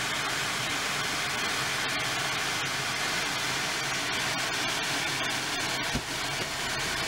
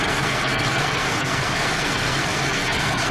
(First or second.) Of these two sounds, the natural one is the first